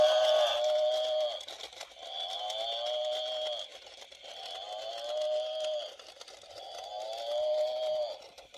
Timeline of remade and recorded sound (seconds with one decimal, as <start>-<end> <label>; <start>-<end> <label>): 0.0-8.6 recorded